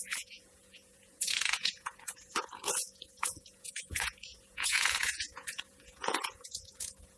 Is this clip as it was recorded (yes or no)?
no